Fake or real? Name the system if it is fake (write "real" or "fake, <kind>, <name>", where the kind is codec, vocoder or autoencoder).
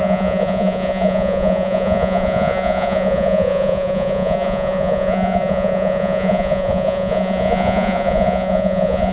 fake, vocoder, Vocos